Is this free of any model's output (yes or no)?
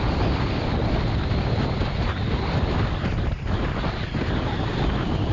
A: yes